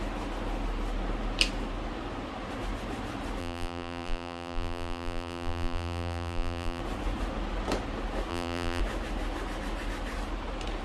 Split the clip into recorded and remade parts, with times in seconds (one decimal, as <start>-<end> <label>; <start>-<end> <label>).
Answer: 0.0-3.4 recorded; 3.4-6.8 remade; 6.8-8.3 recorded; 8.3-8.8 remade; 8.8-10.8 recorded